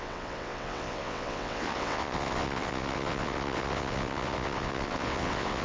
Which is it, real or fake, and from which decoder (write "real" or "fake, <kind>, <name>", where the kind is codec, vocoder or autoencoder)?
fake, vocoder, WaveNeXt